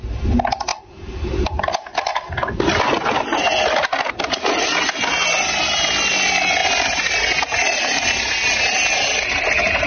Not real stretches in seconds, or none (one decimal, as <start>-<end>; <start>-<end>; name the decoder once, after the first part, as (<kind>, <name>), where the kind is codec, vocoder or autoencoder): none